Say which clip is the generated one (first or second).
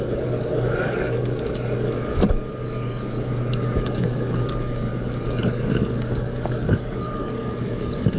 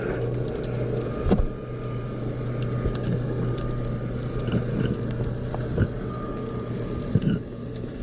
first